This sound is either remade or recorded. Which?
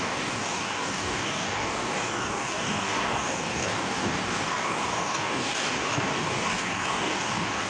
remade